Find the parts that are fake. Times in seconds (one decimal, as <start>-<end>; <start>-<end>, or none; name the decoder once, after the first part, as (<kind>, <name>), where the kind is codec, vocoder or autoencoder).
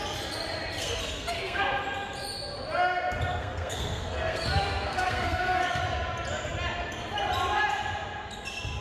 0.8-1.6 (codec, SNAC); 3.4-5.8